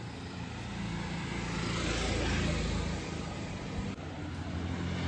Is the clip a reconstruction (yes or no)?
no